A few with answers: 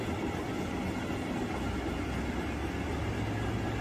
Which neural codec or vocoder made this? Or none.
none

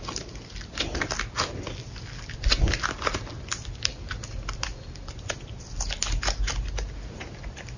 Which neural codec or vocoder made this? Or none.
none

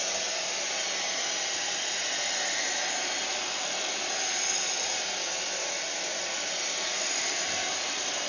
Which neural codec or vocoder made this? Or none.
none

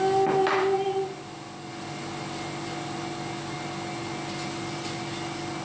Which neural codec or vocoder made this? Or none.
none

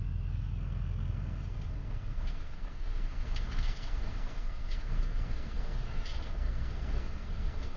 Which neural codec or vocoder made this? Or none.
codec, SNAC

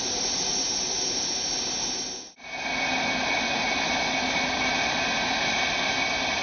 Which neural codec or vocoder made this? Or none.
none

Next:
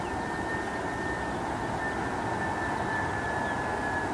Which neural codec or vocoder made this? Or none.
none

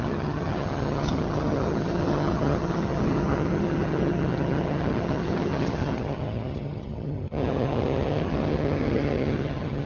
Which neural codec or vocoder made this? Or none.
vocoder, HiFi-GAN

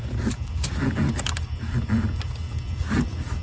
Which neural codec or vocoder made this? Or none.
none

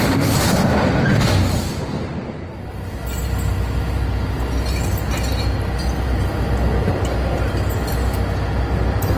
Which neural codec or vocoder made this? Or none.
none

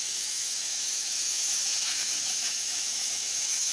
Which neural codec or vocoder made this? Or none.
autoencoder, DAC-VAE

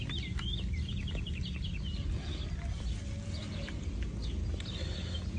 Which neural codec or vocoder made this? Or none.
none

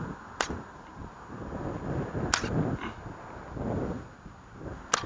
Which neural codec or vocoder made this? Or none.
none